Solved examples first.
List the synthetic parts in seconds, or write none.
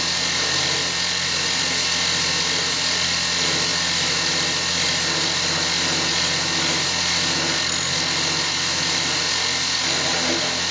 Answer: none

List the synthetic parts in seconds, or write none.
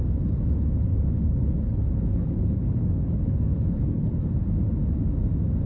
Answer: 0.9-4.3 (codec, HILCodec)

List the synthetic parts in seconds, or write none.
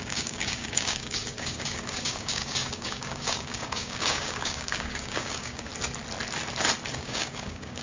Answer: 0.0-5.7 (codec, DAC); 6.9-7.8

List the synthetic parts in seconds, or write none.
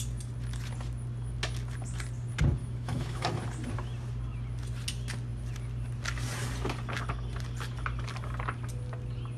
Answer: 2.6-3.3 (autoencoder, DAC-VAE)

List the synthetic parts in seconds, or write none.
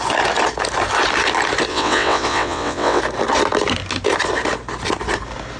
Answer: 1.7-3.0 (vocoder, WaveNeXt)